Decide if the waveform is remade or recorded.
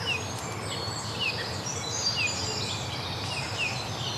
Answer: recorded